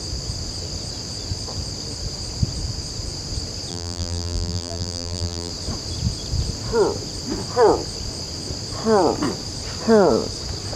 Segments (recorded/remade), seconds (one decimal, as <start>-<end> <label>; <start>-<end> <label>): 0.0-3.7 recorded; 3.7-5.5 remade; 5.5-10.8 recorded